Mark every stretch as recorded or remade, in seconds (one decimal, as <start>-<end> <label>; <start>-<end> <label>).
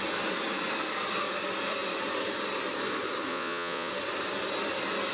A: 0.0-3.3 recorded; 3.3-3.9 remade; 3.9-5.1 recorded